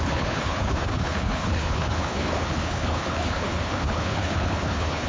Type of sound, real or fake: fake